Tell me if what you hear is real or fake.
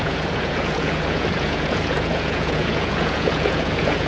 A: fake